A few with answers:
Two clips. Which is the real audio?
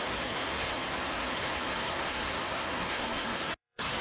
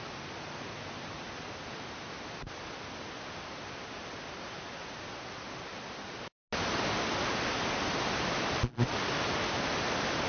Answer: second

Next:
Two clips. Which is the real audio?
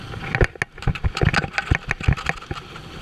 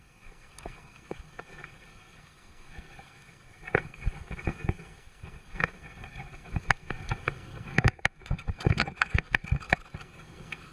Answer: first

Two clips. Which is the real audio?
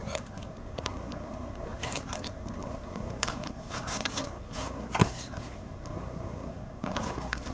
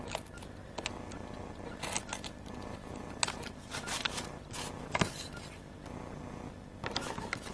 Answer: second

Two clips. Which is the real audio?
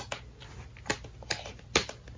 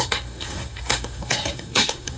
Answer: first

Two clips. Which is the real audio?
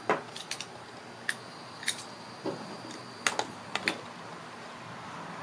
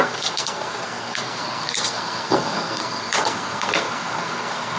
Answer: first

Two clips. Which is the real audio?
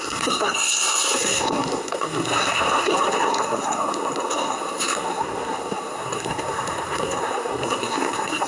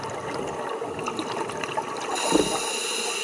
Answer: second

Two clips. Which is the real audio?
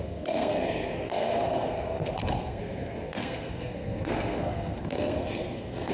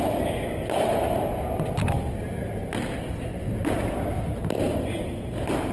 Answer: second